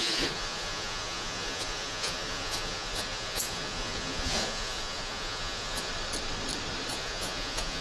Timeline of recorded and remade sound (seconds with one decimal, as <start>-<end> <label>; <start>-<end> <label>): 0.0-5.9 remade; 5.9-6.9 recorded; 6.9-7.8 remade